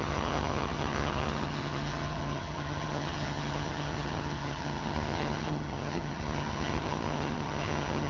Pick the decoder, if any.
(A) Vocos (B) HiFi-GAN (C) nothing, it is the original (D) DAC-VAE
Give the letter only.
B